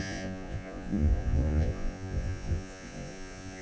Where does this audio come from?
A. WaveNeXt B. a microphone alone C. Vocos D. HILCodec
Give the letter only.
C